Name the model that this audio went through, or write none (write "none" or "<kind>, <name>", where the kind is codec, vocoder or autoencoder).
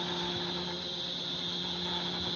none